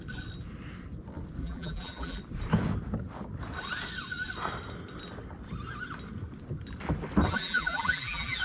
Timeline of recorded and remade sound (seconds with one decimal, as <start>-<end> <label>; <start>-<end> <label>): 0.0-1.4 recorded; 1.4-2.2 remade; 2.2-7.3 recorded; 7.3-8.4 remade

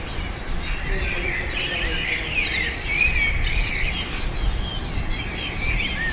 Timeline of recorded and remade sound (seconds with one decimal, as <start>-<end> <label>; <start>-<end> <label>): 0.0-6.1 recorded